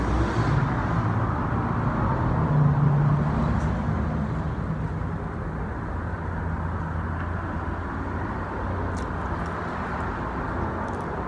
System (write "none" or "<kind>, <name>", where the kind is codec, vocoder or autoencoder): none